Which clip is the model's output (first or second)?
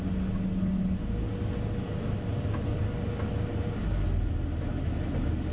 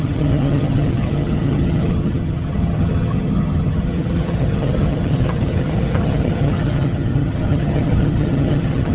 second